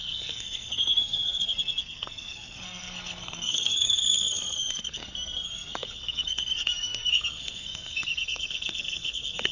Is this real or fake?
fake